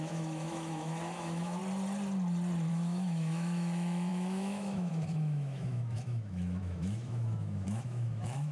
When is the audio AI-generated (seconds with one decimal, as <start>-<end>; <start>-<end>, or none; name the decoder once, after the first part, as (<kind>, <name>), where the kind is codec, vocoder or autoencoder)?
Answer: 0.0-1.6 (autoencoder, DAC-VAE); 2.7-8.5